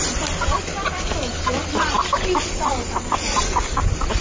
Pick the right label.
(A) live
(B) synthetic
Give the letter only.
A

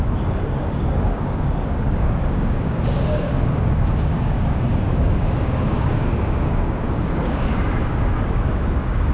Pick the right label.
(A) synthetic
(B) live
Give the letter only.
A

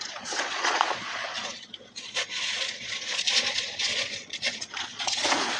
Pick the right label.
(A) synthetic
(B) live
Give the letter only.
A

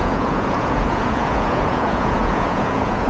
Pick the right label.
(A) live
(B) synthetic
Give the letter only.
B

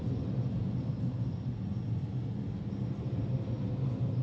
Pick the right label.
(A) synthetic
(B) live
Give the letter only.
B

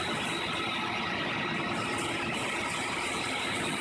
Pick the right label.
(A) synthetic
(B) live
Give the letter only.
B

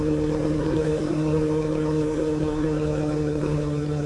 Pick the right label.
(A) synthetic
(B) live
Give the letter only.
A